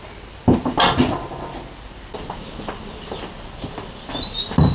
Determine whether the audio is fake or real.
real